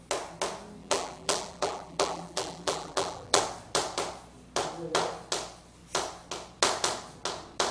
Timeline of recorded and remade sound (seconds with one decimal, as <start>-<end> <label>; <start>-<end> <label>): 0.0-0.8 recorded; 0.8-3.4 remade; 3.4-7.7 recorded